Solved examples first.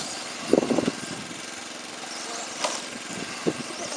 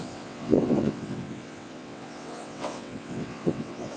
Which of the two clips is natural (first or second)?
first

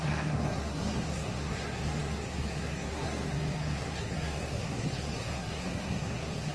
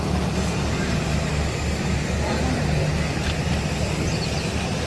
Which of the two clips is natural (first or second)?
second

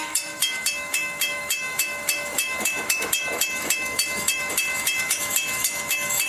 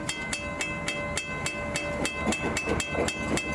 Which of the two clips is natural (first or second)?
second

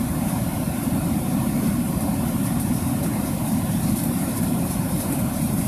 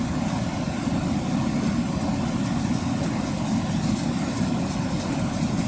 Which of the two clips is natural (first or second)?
second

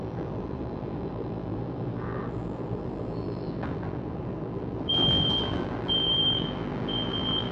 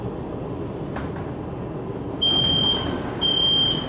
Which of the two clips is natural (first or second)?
second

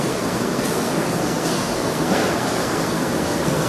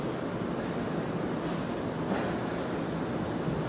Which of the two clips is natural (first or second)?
second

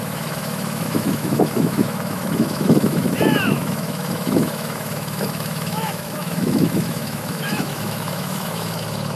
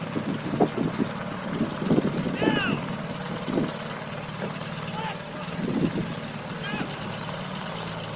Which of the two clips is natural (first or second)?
second